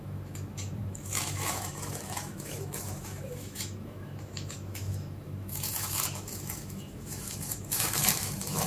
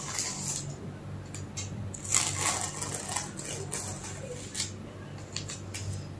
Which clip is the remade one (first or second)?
first